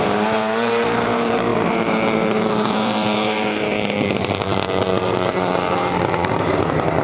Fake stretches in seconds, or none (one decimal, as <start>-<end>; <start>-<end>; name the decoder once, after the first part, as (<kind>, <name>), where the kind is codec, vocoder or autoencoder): 0.0-7.0 (vocoder, BigVGAN v2)